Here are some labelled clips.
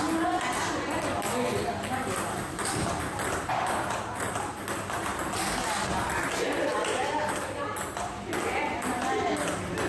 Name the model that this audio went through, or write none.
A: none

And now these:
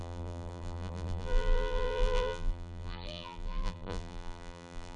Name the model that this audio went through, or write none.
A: vocoder, BigVGAN v2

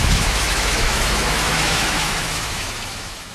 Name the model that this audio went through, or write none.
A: autoencoder, DAC-VAE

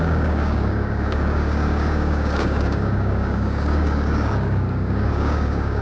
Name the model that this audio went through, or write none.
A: codec, DAC